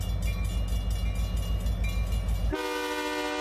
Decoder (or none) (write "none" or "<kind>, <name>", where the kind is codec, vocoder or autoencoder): none